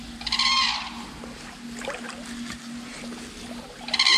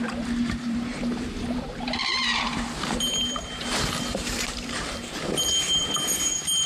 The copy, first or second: second